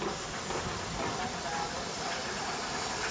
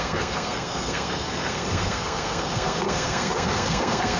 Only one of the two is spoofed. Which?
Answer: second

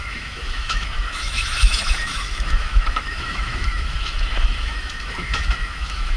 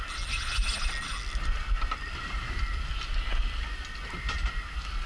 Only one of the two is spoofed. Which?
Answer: first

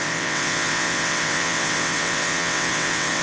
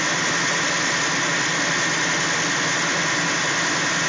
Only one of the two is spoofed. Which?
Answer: first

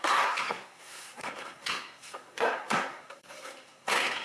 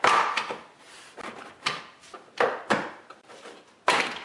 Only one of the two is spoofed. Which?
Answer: first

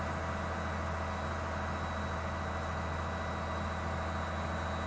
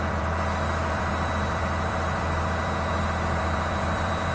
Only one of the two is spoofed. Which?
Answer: second